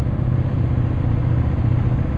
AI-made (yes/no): no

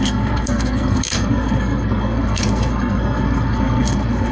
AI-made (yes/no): yes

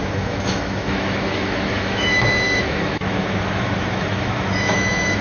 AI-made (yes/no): yes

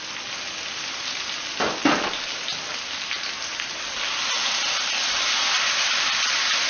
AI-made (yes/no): no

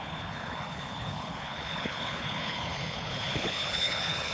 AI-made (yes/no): yes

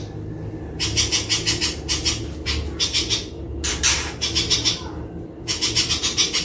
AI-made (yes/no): no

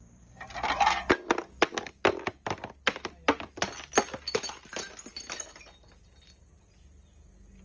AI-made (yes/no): no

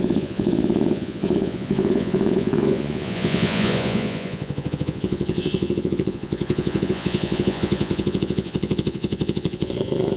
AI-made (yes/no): yes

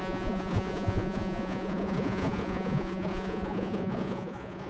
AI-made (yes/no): yes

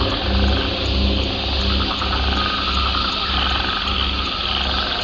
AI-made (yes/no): no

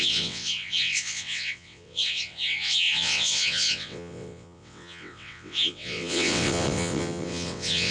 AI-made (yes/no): yes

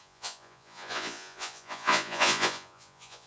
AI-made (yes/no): yes